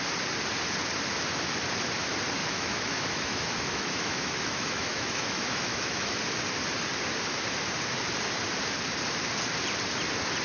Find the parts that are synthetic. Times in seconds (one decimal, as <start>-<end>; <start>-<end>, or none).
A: 2.4-6.2